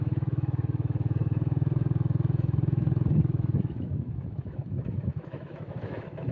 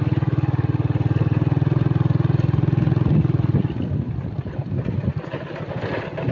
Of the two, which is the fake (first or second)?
first